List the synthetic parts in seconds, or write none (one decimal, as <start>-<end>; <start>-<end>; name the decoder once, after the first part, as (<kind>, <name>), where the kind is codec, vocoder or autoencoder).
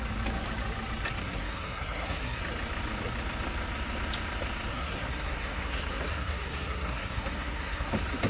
1.2-2.4 (codec, SNAC); 4.7-7.9